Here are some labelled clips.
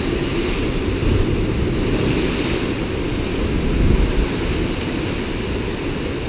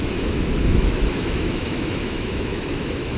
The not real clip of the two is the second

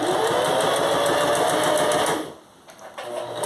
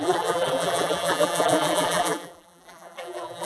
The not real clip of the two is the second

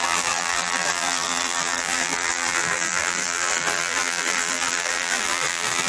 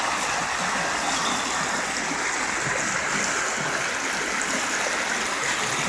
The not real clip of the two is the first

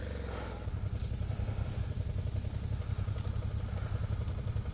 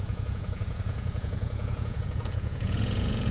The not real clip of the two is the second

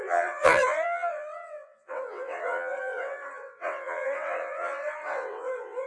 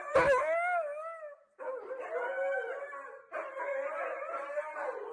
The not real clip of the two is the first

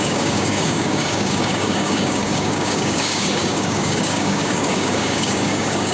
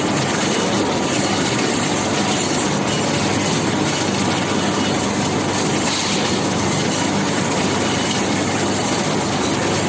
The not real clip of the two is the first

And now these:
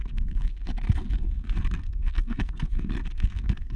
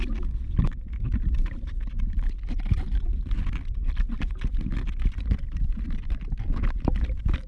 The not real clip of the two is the first